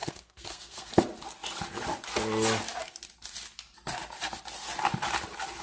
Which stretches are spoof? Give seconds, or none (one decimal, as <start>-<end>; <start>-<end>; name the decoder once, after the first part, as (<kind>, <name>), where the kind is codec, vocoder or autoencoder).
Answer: 0.0-0.9 (codec, SNAC)